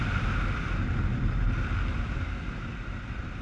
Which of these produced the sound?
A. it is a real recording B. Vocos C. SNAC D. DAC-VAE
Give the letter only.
A